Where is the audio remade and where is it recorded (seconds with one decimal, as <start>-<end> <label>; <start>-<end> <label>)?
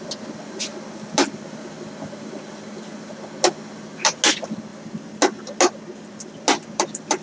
0.0-7.2 recorded